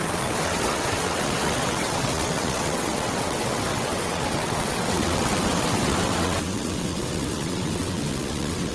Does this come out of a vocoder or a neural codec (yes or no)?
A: yes